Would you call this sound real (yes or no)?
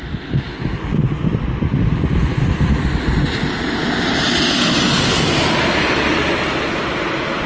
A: yes